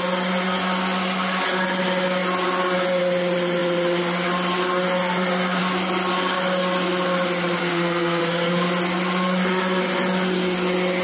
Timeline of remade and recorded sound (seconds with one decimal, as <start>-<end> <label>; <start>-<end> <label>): 0.0-7.6 recorded; 7.6-8.2 remade; 8.2-11.0 recorded